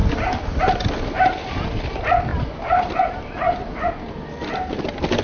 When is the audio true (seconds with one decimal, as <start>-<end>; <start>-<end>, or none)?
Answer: 0.6-2.3; 3.9-5.2